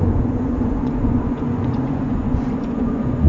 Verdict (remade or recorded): remade